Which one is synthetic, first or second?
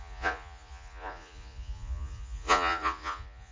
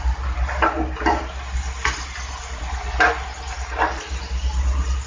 first